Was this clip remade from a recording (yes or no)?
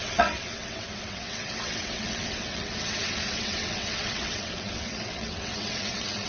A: yes